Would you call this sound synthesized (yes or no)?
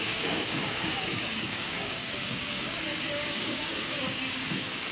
yes